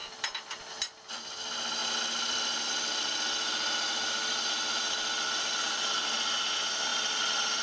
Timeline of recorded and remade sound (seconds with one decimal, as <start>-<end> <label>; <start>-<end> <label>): 0.0-0.7 remade; 0.7-1.8 recorded; 1.8-5.6 remade; 5.6-6.9 recorded; 6.9-7.6 remade